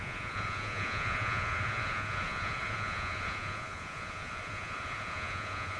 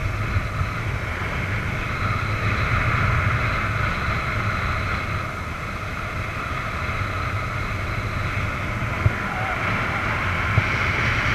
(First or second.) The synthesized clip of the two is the first